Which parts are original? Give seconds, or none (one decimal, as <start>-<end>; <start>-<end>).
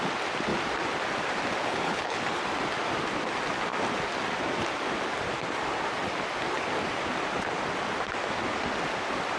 0.0-1.6; 2.4-9.4